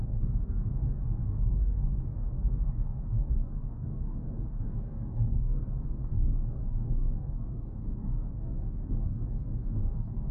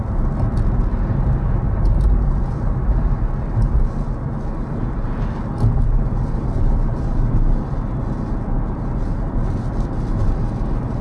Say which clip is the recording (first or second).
second